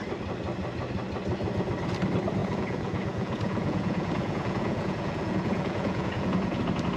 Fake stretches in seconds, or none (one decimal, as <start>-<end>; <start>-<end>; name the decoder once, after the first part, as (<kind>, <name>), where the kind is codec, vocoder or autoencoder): 2.4-6.6 (vocoder, Vocos)

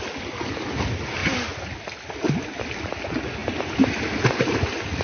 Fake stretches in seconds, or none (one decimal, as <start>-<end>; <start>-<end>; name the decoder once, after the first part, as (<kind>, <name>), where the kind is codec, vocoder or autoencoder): none

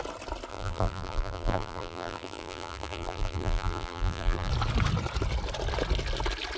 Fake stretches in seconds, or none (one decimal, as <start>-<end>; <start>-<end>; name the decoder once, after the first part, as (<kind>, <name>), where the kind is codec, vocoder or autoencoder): 0.5-4.5 (vocoder, BigVGAN v2)

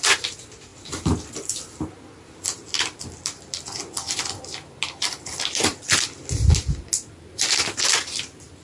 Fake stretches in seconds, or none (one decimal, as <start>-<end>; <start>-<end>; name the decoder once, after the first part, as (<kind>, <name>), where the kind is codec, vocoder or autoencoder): 0.7-2.7 (vocoder, BigVGAN v2)

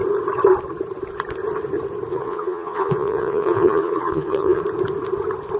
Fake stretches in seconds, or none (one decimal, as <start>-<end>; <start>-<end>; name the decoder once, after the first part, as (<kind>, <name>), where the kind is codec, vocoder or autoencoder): 2.1-4.6 (vocoder, Vocos)

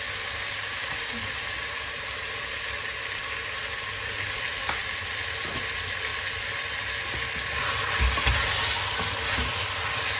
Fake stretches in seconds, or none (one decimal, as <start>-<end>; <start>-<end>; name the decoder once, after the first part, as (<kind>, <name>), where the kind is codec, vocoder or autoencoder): none

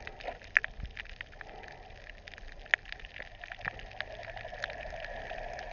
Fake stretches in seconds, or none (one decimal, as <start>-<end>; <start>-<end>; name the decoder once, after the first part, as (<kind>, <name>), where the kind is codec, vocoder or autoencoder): none

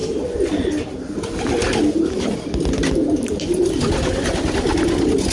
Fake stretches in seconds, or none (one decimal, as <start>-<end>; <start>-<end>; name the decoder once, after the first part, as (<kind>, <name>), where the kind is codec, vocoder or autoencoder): none